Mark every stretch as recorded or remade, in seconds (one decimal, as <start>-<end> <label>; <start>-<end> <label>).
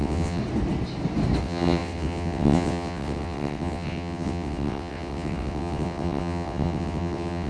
0.0-0.4 remade; 0.4-1.4 recorded; 1.4-7.5 remade